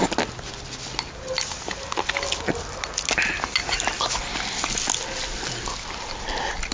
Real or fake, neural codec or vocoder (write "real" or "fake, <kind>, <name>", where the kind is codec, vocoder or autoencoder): real